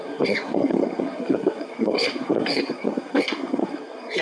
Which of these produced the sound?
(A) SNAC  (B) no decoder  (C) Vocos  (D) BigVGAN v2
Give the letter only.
A